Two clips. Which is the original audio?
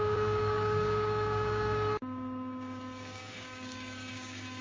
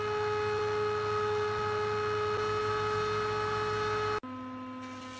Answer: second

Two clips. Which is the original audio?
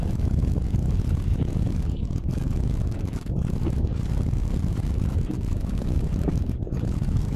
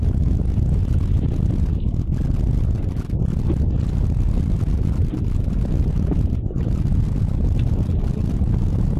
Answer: second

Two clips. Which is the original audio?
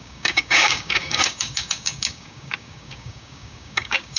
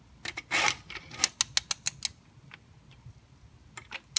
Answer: second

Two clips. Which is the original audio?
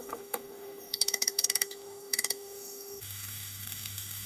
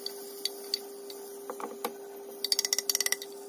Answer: second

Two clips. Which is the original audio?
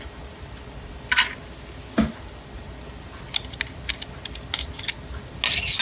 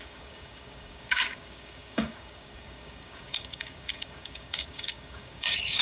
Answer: first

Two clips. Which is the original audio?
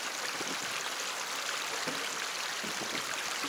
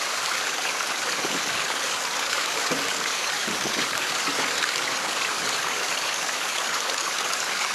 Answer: first